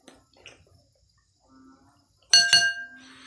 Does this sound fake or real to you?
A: real